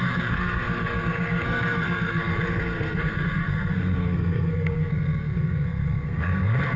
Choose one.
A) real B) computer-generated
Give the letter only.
B